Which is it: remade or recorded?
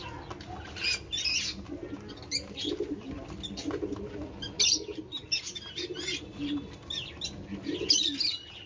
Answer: recorded